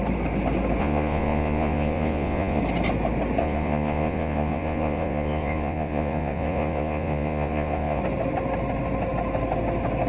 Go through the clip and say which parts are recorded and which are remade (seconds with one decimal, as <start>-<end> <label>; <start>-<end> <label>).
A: 0.0-0.8 recorded; 0.8-2.6 remade; 2.6-3.4 recorded; 3.4-8.0 remade; 8.0-10.1 recorded